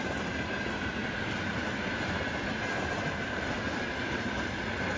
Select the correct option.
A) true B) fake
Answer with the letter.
A